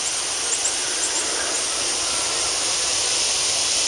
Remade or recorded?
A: recorded